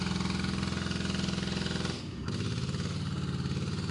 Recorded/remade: recorded